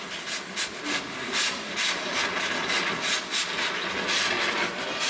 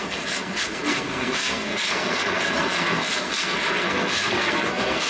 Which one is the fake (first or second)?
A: second